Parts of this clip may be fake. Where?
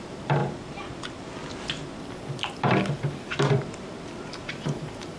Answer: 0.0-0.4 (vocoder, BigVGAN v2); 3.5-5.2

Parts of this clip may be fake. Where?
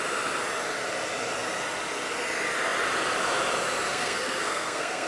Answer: 3.9-5.1 (codec, SNAC)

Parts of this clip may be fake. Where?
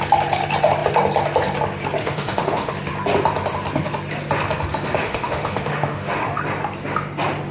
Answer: 2.0-2.7 (autoencoder, DAC-VAE); 4.7-6.4